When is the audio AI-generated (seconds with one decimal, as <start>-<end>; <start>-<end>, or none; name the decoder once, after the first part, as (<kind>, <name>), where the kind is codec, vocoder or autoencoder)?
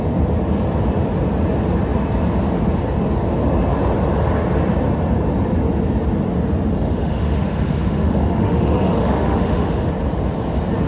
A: 6.8-9.9 (autoencoder, DAC-VAE)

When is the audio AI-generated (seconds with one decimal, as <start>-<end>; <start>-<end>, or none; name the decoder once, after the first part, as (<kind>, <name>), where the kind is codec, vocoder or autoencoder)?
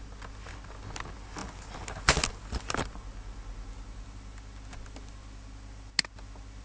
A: none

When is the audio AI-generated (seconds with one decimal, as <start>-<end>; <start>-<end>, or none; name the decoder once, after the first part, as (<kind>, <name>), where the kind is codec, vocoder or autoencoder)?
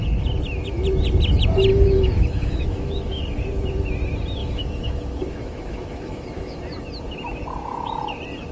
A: 1.7-3.2 (autoencoder, DAC-VAE); 4.4-6.6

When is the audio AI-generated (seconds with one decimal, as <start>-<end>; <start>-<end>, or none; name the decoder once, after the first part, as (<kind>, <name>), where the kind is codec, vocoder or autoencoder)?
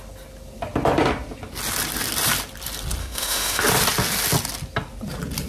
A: 3.0-3.6 (autoencoder, DAC-VAE)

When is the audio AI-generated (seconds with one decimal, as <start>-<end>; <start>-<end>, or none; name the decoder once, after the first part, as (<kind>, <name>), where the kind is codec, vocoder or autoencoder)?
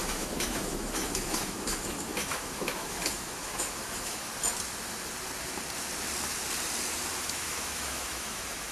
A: 0.0-4.3 (autoencoder, DAC-VAE); 7.2-8.7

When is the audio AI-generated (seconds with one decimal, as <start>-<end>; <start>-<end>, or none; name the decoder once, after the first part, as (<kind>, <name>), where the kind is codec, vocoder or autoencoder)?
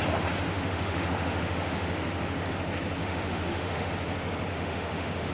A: 0.5-2.5 (autoencoder, DAC-VAE); 3.0-3.9; 4.5-5.3